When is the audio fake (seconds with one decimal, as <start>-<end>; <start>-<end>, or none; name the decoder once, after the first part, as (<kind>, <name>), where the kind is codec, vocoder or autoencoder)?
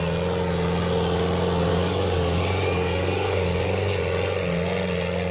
1.7-4.0 (codec, DAC)